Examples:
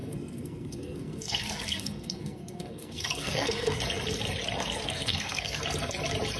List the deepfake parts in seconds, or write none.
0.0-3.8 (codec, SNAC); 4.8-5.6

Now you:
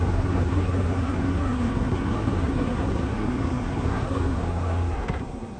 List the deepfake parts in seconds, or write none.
0.0-5.6 (codec, SNAC)